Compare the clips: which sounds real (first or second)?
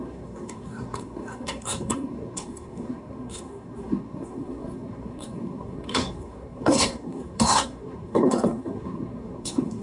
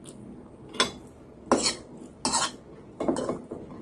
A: second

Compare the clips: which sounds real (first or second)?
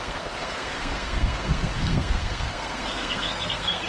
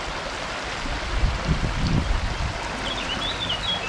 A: second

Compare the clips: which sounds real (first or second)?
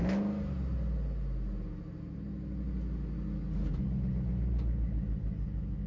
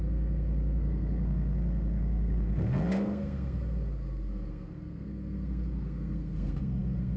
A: first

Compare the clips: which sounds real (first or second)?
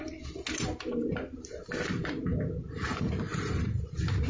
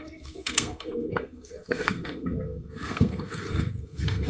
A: first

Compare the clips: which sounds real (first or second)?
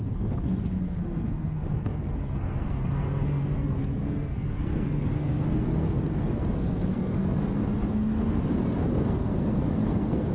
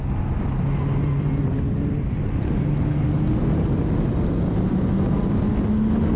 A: second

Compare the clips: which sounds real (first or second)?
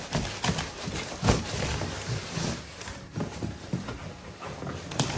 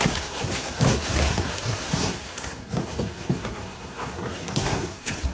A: first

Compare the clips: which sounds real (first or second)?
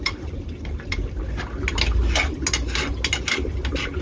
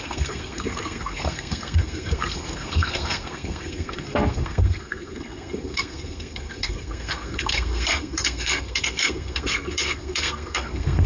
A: first